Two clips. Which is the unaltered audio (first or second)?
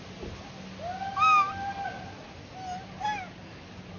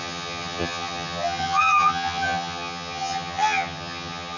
first